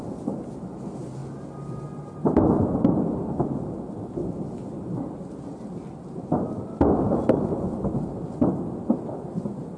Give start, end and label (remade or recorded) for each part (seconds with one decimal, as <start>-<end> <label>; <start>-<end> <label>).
0.0-9.8 recorded